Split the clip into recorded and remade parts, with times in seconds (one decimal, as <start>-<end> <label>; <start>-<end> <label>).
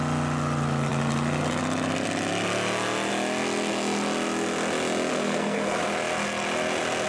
0.0-5.1 recorded; 5.1-5.8 remade; 5.8-7.1 recorded